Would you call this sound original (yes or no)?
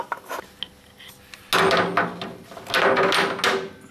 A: yes